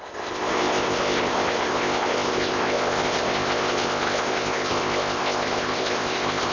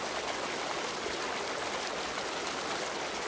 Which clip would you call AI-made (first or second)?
first